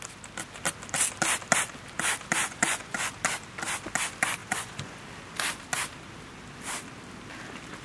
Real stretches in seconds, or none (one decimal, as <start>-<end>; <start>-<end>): 0.0-2.4; 3.1-4.4; 5.0-7.8